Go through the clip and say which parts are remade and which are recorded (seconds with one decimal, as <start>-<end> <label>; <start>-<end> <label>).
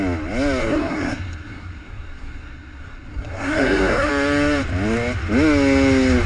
0.0-0.6 recorded; 0.6-4.1 remade; 4.1-6.3 recorded